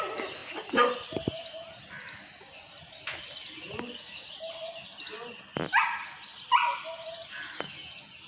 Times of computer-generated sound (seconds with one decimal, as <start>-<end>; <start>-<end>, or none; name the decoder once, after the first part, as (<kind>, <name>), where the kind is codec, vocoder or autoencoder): none